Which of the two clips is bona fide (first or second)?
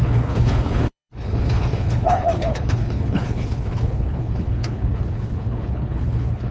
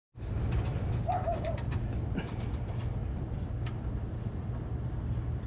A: second